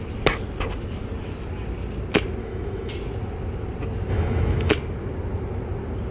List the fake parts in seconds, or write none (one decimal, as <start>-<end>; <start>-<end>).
2.4-2.9; 4.1-4.7